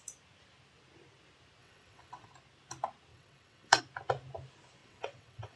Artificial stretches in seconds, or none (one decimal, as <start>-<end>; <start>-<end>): 1.6-2.3; 3.1-3.8; 4.8-5.6